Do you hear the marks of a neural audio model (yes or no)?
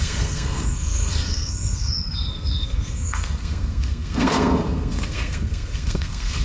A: yes